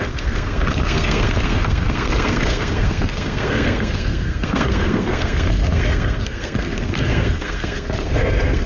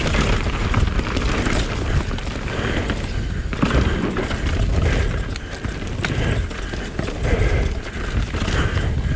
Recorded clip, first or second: second